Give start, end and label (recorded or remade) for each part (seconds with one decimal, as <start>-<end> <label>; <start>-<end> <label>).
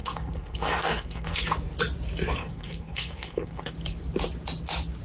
0.0-1.4 remade; 1.4-2.4 recorded; 2.4-3.7 remade; 3.7-5.0 recorded